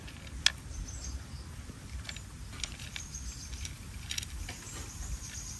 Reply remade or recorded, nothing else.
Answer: recorded